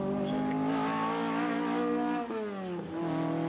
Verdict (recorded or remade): recorded